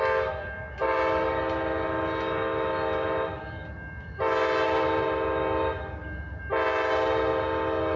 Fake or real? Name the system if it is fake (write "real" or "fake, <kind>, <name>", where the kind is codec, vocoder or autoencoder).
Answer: real